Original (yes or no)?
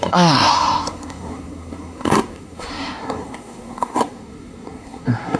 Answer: no